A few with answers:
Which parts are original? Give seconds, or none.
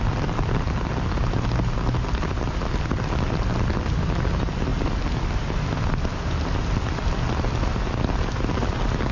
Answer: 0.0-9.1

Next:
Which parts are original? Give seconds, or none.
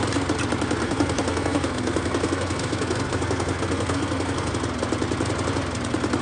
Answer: 0.0-0.8; 4.5-6.2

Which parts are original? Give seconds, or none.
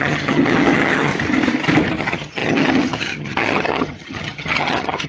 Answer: 1.1-2.0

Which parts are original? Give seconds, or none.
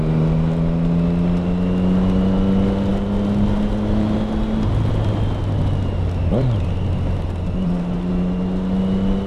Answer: 0.0-9.3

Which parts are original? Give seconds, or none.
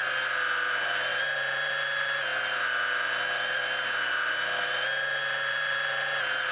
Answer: 0.0-6.5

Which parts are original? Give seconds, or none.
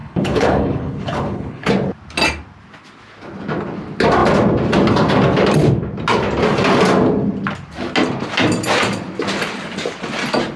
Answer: 1.7-10.6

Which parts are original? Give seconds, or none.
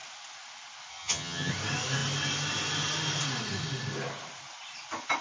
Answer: 0.0-0.9; 1.5-5.2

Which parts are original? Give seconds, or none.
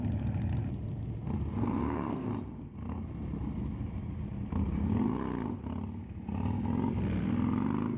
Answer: 0.0-1.5; 2.3-8.0